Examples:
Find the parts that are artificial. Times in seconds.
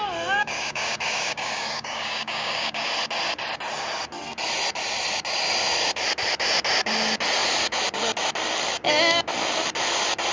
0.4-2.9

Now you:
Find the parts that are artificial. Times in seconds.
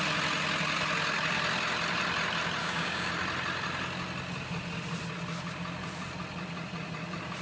2.6-3.1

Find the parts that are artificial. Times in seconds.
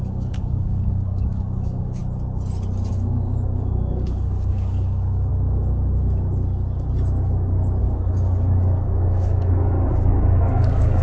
0.0-2.0; 2.9-5.3; 7.8-11.0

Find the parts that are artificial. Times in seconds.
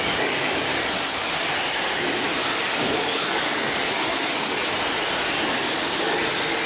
0.0-0.7; 2.6-4.6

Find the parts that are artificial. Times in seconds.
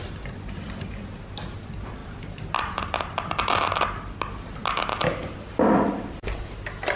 none